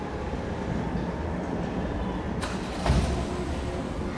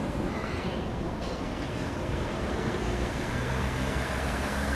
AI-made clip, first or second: second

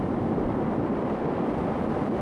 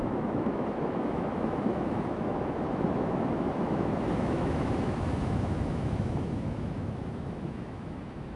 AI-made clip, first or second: second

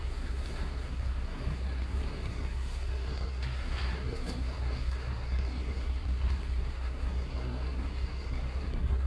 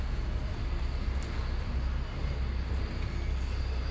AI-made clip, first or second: first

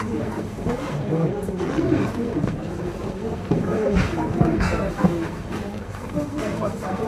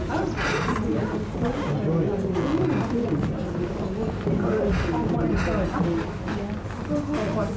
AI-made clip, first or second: first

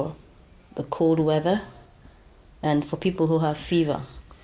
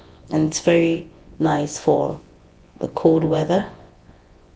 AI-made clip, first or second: second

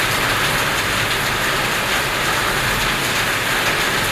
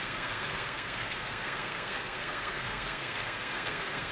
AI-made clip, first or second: second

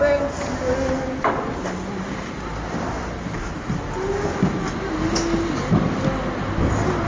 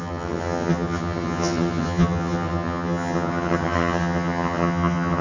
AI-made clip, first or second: second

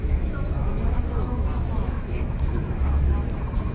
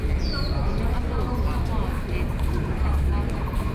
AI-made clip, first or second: first